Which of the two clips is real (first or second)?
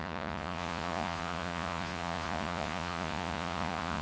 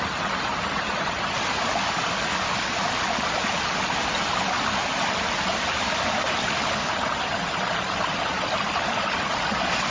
second